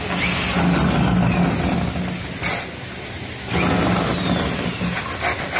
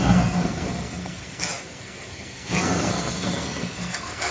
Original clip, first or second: first